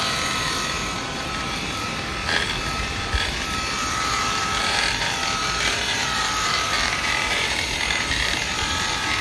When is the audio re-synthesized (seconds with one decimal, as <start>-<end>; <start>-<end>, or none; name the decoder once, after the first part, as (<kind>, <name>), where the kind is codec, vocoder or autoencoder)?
0.0-2.1 (vocoder, BigVGAN v2); 2.6-9.2